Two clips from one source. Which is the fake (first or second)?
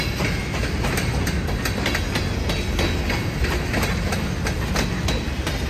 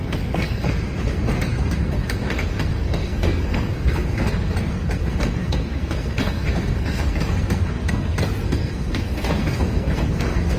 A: second